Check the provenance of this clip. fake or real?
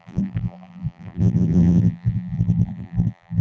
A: fake